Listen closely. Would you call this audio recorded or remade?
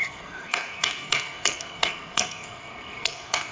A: remade